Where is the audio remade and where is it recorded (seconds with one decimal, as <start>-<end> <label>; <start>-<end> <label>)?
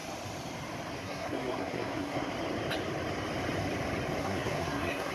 0.0-1.0 recorded; 1.0-2.3 remade; 2.3-4.2 recorded; 4.2-5.1 remade